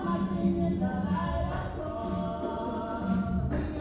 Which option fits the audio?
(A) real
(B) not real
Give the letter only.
A